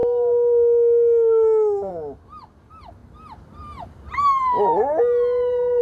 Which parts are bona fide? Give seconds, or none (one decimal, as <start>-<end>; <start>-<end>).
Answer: 1.9-5.8

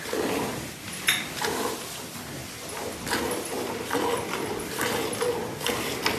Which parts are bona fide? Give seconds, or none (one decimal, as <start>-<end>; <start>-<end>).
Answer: 0.0-6.2

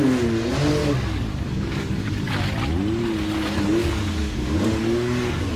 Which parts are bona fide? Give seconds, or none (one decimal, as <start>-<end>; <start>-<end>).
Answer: 0.0-0.8; 2.3-3.8

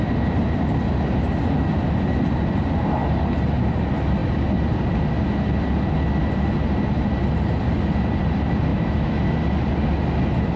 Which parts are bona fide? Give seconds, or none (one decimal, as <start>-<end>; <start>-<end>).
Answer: 0.0-8.7; 9.2-10.6

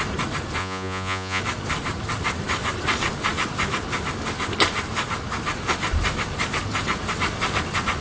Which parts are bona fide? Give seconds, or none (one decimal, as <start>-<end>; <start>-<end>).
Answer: 0.0-0.6; 1.4-8.0